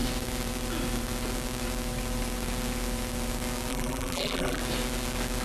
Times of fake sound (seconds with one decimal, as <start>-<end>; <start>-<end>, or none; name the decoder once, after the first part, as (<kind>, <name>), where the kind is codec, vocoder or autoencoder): 3.7-4.6 (vocoder, BigVGAN v2)